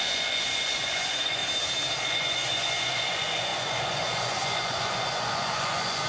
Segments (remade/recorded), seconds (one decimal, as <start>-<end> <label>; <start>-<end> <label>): 0.0-1.4 remade; 1.4-2.0 recorded; 2.0-6.1 remade